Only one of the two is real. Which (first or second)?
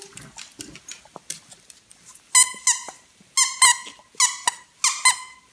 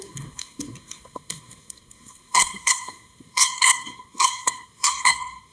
first